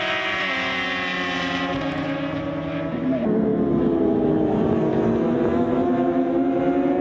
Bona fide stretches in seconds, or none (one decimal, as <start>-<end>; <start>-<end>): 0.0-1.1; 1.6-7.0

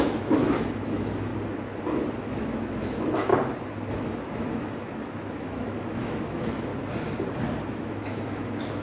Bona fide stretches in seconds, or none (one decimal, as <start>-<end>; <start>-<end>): 1.3-2.2; 3.3-3.9; 6.7-7.7

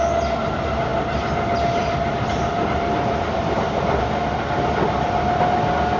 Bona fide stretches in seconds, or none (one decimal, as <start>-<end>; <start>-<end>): 0.0-0.9; 4.0-6.0

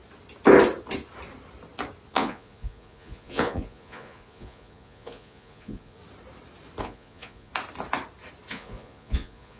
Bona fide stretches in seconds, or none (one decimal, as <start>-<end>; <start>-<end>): 0.0-2.1; 6.0-6.8; 7.5-8.5

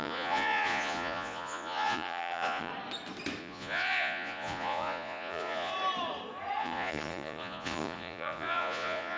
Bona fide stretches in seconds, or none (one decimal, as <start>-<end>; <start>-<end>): 2.7-3.4; 5.7-6.6

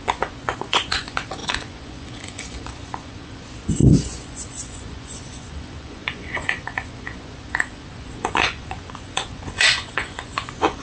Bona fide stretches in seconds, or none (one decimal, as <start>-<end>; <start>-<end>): none

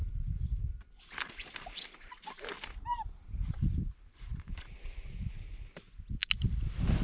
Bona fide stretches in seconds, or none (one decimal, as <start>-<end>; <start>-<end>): 0.0-7.0

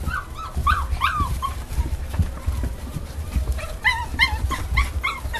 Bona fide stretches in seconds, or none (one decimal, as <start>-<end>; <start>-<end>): 0.0-0.6; 3.8-5.4